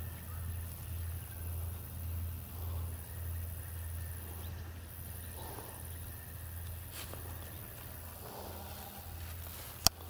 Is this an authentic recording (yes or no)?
yes